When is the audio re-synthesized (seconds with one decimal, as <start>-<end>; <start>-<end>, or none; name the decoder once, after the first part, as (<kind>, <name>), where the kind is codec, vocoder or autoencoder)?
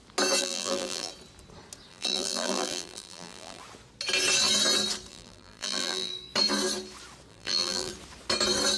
0.4-1.1 (vocoder, BigVGAN v2); 1.9-3.6; 5.1-6.1; 7.3-7.9